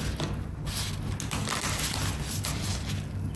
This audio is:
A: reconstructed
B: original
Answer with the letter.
B